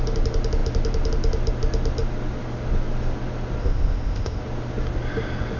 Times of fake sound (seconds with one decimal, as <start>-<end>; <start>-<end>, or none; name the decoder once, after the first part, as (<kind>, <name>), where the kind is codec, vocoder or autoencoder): 3.6-4.4 (codec, ZipCodec)